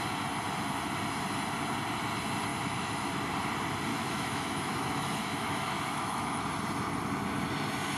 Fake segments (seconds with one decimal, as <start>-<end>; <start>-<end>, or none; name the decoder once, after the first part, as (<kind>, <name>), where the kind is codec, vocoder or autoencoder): 2.5-3.1 (autoencoder, DAC-VAE); 3.9-6.4